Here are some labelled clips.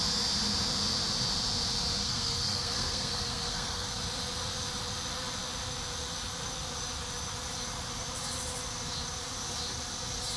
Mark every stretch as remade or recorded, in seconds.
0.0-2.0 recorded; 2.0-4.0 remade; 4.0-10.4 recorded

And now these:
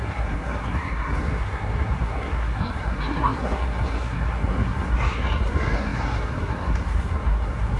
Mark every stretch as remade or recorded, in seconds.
0.0-7.8 remade

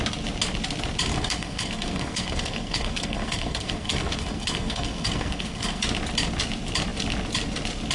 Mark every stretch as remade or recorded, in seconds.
0.0-1.1 recorded; 1.1-5.8 remade; 5.8-7.9 recorded

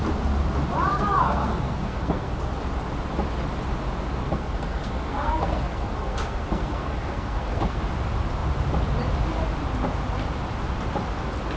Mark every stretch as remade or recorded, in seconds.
0.0-0.9 recorded; 0.9-2.4 remade; 2.4-4.2 recorded; 4.2-7.8 remade; 7.8-11.6 recorded

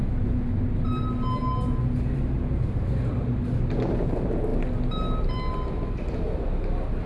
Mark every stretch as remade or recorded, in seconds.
0.0-7.1 recorded

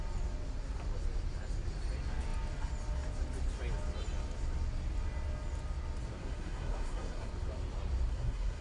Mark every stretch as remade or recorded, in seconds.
0.0-6.2 recorded; 6.2-7.3 remade; 7.3-8.1 recorded; 8.1-8.6 remade